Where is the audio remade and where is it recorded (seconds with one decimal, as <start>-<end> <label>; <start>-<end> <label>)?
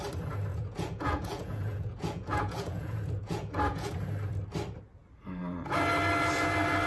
0.0-0.5 recorded; 0.5-3.9 remade; 3.9-6.9 recorded